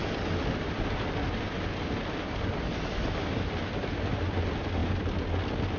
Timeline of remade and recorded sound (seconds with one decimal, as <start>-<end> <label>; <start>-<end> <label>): 0.0-5.8 recorded